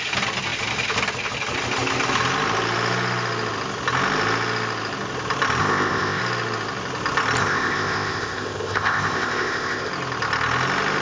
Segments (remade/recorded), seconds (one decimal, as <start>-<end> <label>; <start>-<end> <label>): 0.0-5.6 recorded; 5.6-6.2 remade; 6.2-7.4 recorded; 7.4-9.9 remade; 9.9-11.0 recorded